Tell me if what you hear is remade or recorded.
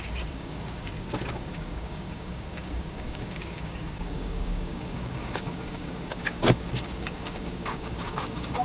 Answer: remade